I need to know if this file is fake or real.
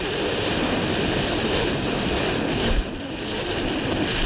real